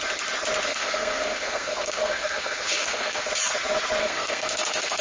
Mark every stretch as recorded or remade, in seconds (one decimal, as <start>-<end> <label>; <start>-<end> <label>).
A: 0.0-0.7 recorded; 0.7-3.3 remade; 3.3-4.0 recorded; 4.0-5.0 remade